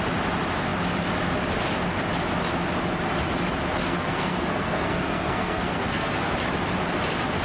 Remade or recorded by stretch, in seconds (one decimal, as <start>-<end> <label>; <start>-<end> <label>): 0.0-3.8 recorded; 3.8-6.3 remade; 6.3-7.4 recorded

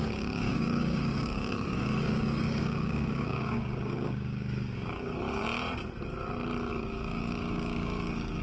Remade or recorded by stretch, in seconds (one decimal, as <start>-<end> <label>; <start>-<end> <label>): 0.0-5.4 remade; 5.4-6.7 recorded; 6.7-8.4 remade

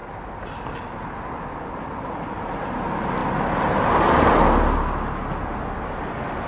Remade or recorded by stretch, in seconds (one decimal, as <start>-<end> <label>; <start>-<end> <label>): 0.0-6.5 recorded

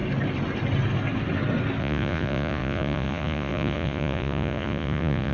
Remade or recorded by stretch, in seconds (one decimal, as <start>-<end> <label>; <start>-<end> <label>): 0.0-1.8 recorded; 1.8-5.3 remade

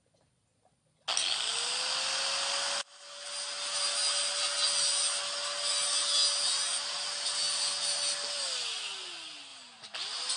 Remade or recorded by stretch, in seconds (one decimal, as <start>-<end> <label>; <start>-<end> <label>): 0.0-9.5 recorded; 9.5-10.4 remade

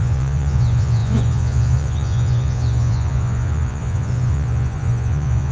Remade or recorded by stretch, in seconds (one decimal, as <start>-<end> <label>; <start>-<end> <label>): 0.0-5.5 remade

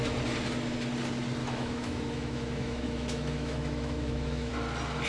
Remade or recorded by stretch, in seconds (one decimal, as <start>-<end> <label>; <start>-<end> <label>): 0.0-1.4 recorded; 1.4-4.5 remade; 4.5-5.1 recorded